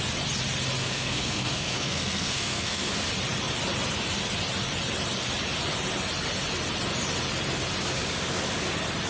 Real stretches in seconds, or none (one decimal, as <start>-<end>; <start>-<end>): 0.0-0.8; 2.9-9.1

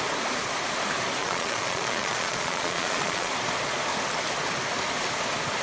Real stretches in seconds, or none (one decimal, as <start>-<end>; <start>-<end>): 0.0-1.2; 3.3-5.6

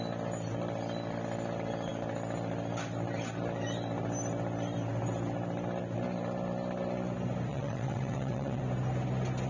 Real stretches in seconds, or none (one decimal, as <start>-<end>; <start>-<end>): 0.0-7.5; 8.6-9.5